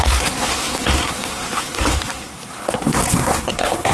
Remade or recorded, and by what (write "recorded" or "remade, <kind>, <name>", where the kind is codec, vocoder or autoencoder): remade, codec, SNAC